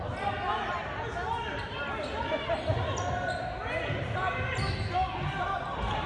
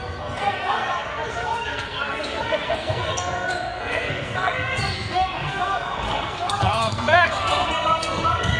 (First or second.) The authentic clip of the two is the first